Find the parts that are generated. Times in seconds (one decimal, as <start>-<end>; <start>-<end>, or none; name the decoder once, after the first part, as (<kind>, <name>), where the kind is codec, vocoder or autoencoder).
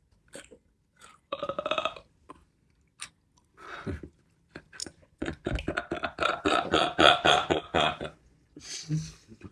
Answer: 1.1-1.6 (vocoder, Vocos); 4.8-5.5; 6.3-8.6